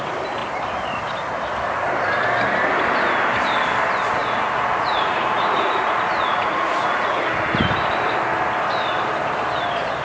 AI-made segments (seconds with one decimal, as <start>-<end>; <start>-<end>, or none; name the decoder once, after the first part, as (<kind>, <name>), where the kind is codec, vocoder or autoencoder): 4.2-7.2 (vocoder, Vocos)